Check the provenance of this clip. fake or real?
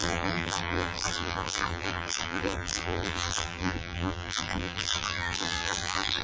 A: fake